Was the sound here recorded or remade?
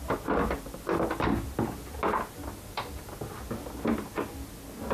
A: recorded